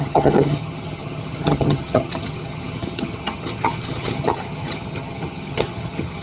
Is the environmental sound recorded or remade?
remade